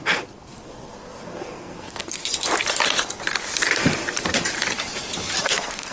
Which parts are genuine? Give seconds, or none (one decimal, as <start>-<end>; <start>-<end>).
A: 2.2-5.4